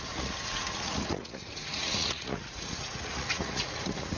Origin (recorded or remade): remade